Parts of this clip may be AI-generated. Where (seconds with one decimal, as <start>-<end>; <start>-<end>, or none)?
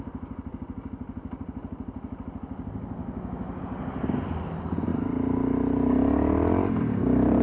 3.0-3.6